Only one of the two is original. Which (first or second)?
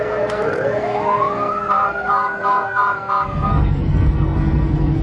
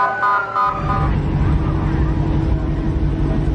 second